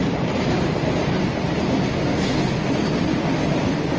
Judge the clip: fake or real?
real